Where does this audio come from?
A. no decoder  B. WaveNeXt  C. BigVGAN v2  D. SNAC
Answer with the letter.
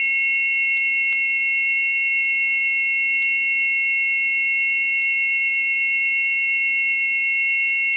A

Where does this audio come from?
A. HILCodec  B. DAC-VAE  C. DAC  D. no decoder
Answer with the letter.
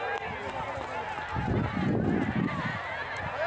D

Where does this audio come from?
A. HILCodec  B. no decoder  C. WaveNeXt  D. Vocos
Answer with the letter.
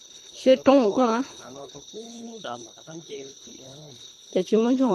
A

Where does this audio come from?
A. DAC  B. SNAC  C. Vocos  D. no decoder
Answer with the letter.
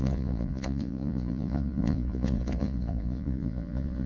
C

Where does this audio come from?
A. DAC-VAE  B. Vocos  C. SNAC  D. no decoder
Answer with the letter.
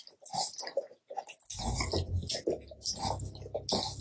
D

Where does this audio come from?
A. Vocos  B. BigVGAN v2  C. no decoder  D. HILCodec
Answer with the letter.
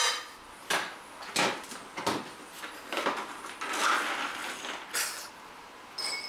C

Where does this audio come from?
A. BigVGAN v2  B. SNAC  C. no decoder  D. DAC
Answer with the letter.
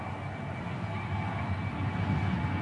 C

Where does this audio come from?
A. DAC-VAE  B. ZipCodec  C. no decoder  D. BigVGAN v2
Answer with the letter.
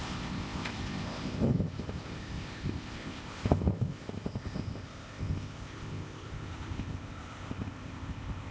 B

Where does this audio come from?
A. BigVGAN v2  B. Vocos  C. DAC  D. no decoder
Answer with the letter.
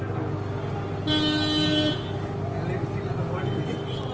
D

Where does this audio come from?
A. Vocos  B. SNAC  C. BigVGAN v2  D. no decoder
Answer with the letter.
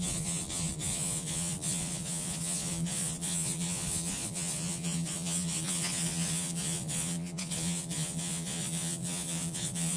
A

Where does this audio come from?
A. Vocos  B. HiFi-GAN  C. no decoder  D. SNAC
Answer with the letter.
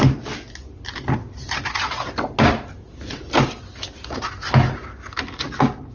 C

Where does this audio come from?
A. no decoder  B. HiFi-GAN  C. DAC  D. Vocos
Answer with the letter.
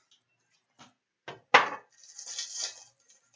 A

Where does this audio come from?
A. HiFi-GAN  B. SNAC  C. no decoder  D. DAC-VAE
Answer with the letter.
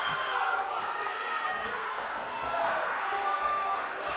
B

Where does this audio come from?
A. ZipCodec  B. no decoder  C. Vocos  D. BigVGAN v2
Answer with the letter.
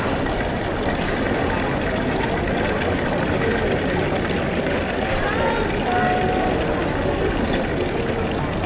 B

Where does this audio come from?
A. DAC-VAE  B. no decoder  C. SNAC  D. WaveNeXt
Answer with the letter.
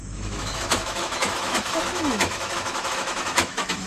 A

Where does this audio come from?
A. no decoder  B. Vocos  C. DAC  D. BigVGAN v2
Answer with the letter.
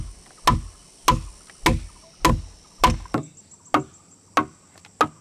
A